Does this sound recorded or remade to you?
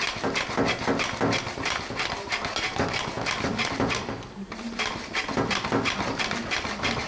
recorded